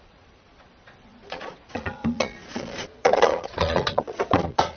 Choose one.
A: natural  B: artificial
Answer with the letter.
B